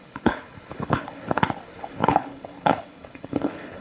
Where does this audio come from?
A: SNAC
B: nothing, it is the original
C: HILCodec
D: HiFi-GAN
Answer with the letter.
C